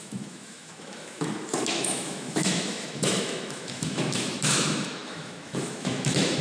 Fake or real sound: fake